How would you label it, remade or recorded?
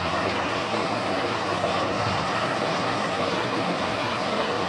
remade